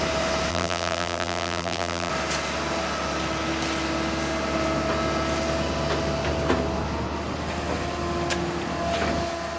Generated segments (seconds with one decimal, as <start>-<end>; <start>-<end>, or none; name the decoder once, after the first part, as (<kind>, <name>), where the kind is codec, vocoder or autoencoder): 0.5-2.1 (vocoder, BigVGAN v2)